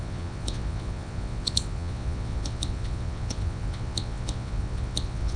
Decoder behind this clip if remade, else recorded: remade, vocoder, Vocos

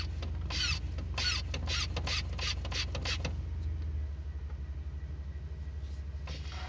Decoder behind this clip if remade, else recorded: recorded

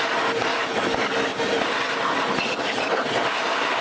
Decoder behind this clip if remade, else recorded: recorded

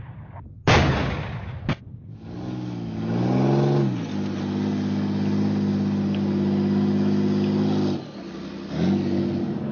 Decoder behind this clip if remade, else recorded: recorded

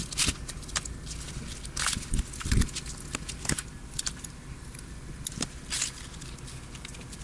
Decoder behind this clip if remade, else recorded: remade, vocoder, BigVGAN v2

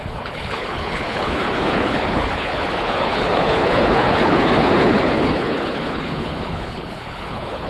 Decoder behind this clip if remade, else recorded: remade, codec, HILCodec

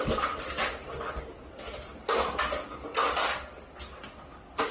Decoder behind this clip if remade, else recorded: recorded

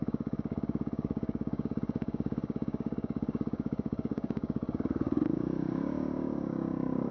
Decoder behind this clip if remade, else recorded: remade, codec, DAC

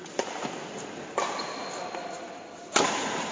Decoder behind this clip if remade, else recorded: recorded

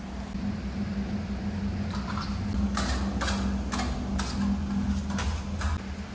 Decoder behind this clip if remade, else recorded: recorded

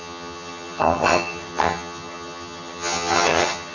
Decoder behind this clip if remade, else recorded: remade, vocoder, HiFi-GAN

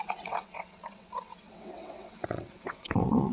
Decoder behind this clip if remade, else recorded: remade, vocoder, WaveNeXt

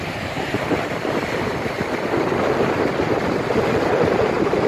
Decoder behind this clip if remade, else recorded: recorded